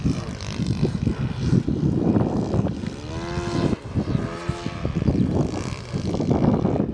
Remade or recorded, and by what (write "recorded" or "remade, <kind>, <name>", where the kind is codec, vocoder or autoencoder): recorded